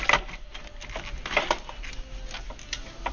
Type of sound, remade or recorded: recorded